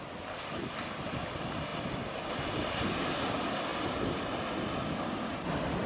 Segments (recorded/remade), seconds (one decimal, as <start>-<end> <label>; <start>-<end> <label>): 0.0-5.9 recorded